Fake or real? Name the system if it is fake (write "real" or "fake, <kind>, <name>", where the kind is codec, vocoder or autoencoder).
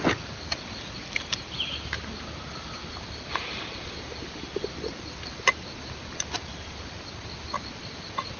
real